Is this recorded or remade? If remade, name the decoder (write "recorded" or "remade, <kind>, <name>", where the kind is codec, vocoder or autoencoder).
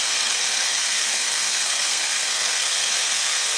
remade, codec, SNAC